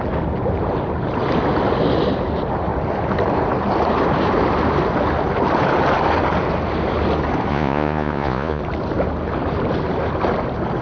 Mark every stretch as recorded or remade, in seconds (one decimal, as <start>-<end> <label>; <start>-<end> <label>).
0.0-7.5 recorded; 7.5-8.6 remade; 8.6-10.8 recorded